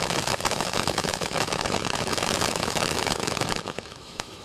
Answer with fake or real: fake